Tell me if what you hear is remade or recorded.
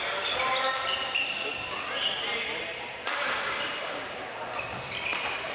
recorded